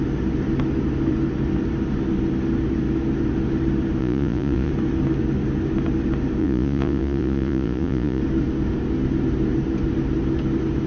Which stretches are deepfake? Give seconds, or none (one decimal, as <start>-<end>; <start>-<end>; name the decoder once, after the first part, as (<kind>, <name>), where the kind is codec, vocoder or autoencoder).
4.0-4.7 (vocoder, Vocos); 6.4-8.2